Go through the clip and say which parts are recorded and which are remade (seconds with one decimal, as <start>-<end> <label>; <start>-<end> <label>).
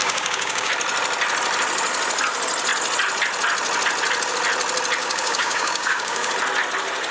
0.0-0.7 remade; 0.7-5.0 recorded; 5.0-6.3 remade; 6.3-7.1 recorded